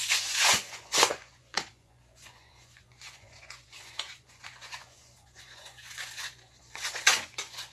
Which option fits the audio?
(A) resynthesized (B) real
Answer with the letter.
A